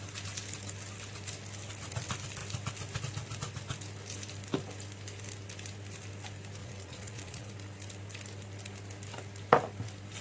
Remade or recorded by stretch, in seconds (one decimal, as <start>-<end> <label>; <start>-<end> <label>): 0.0-6.6 recorded; 6.6-7.5 remade; 7.5-10.2 recorded